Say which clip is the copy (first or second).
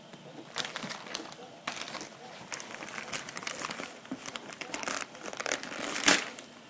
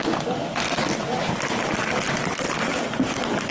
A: first